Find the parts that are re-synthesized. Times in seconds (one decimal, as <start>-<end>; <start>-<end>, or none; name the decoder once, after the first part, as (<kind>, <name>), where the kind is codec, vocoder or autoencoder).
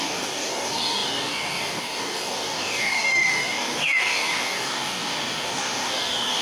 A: 0.0-6.4 (codec, DAC)